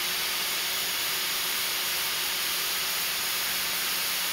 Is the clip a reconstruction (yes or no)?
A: yes